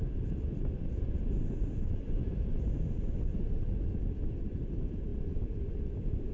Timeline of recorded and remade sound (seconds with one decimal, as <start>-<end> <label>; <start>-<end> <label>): 0.0-2.2 recorded; 2.2-2.8 remade; 2.8-6.3 recorded